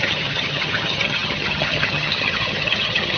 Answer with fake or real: fake